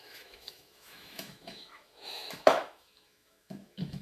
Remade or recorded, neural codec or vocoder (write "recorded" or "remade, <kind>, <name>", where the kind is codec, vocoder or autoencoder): remade, autoencoder, DAC-VAE